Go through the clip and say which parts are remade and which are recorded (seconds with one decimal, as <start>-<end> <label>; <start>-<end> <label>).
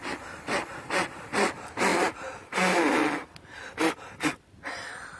0.0-5.2 recorded